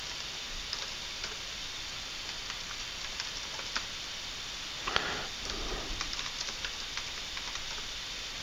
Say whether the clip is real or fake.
real